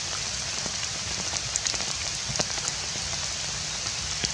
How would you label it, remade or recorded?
recorded